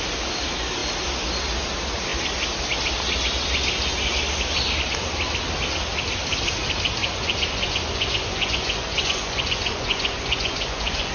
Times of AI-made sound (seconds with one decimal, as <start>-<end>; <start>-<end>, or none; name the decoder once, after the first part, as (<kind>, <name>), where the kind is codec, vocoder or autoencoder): 7.0-11.1 (vocoder, Vocos)